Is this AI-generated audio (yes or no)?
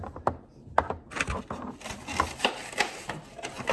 no